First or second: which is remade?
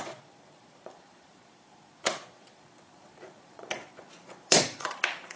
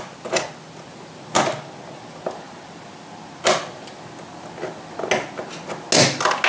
first